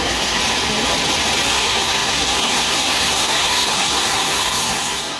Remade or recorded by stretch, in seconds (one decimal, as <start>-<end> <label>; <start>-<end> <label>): 0.0-0.4 remade; 0.4-1.5 recorded; 1.5-5.2 remade